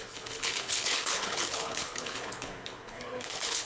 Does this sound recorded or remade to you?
remade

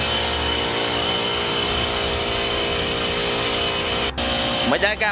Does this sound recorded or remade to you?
recorded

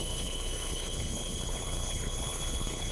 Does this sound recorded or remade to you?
remade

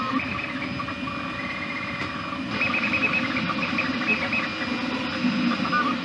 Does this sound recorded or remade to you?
recorded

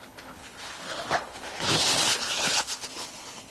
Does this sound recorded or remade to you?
remade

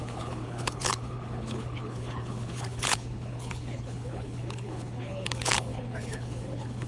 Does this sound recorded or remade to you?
remade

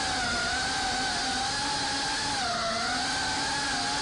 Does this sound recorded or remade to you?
recorded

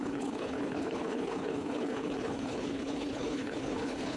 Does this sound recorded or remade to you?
remade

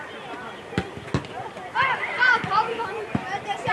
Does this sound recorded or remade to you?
recorded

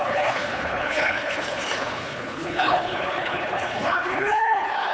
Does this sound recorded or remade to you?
remade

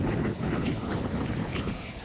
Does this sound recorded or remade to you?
remade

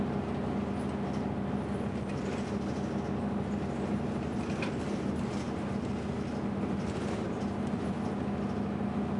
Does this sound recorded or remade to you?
recorded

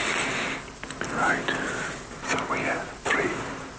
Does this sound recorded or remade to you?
recorded